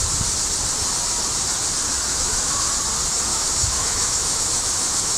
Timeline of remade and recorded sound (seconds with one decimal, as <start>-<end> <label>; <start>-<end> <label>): 0.0-2.1 recorded; 2.1-2.7 remade; 2.7-3.3 recorded; 3.3-5.2 remade